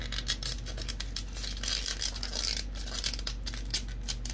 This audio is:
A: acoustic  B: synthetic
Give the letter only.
A